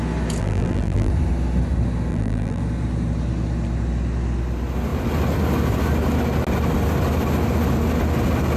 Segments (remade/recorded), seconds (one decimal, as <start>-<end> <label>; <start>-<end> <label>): 0.0-0.4 recorded; 0.4-1.1 remade; 1.1-2.1 recorded; 2.1-2.6 remade; 2.6-8.6 recorded